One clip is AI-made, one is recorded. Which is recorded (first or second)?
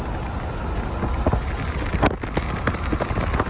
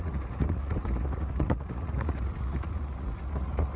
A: first